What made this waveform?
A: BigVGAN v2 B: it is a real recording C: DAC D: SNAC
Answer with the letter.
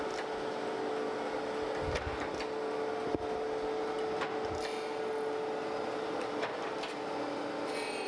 B